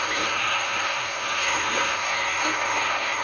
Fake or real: fake